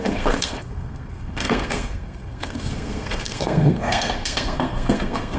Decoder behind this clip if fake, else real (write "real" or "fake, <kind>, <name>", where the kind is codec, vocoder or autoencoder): fake, codec, SNAC